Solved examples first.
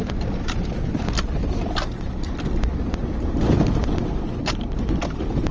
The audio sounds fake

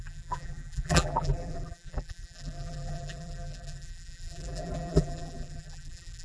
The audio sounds fake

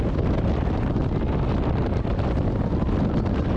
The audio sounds real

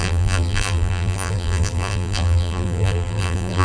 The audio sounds fake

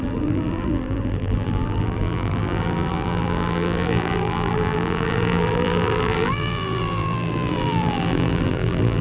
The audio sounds fake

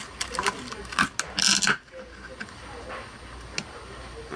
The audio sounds real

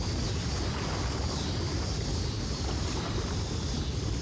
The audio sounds real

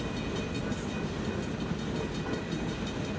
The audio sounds real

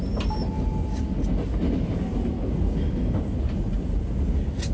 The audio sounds real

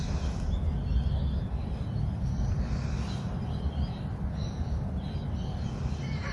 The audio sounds real